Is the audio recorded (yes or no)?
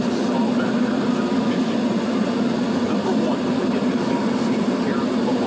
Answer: yes